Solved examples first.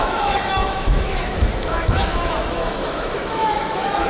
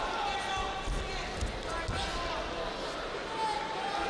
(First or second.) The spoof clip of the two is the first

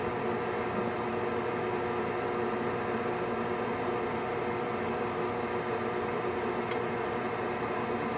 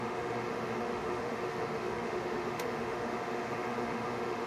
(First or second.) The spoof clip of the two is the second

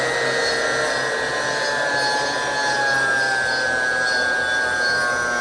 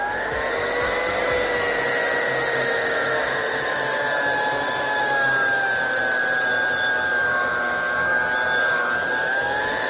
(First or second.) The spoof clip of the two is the second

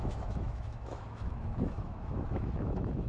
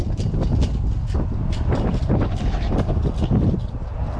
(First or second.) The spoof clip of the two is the first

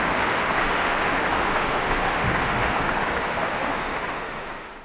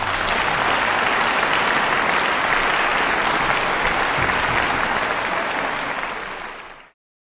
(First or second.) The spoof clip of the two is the first